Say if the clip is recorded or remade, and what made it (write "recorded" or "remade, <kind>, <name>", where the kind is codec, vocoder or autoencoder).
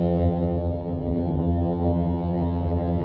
remade, vocoder, HiFi-GAN